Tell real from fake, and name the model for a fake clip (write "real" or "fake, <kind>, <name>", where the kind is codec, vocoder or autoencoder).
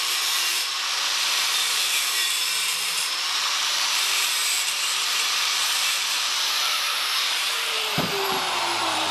fake, vocoder, BigVGAN v2